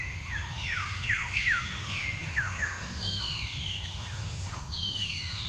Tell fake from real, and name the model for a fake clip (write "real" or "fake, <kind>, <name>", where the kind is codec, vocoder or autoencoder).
fake, autoencoder, DAC-VAE